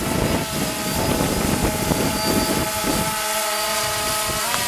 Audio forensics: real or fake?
real